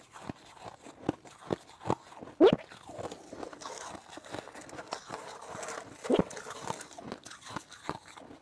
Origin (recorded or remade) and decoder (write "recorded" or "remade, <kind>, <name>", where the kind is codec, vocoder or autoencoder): recorded